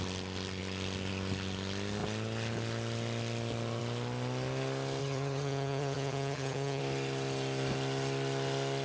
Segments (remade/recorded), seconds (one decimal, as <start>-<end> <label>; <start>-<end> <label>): 0.0-5.0 recorded; 5.0-6.8 remade; 6.8-8.8 recorded